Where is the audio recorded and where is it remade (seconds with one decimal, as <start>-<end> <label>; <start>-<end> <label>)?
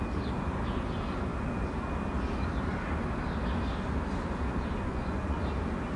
0.0-4.9 recorded; 4.9-5.4 remade; 5.4-6.0 recorded